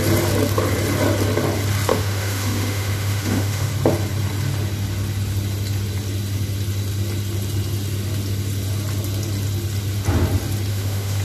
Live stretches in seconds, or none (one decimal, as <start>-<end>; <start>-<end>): 0.0-1.9; 3.7-10.7